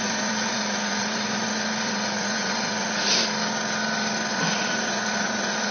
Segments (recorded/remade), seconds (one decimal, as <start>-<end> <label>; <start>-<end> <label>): 0.0-3.2 remade; 3.2-4.3 recorded; 4.3-5.7 remade